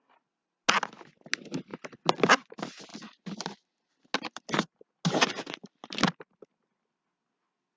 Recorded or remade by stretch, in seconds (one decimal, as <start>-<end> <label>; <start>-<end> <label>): 0.0-7.8 recorded